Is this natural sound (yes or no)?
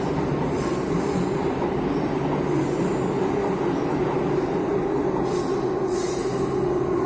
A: yes